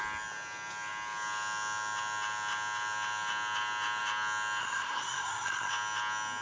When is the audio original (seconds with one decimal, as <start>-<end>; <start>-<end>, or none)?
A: 0.0-4.6; 5.7-6.4